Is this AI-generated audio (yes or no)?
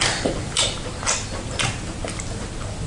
no